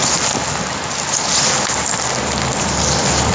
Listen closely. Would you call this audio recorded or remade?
recorded